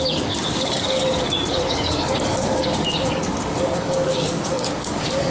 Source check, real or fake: fake